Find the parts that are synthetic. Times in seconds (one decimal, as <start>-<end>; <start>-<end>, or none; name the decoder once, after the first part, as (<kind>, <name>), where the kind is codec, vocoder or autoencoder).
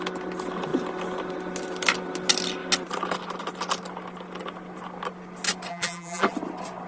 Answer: 5.7-6.3 (vocoder, BigVGAN v2)